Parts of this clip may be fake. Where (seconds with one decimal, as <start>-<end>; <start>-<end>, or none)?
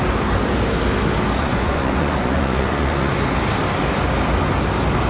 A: 1.4-3.1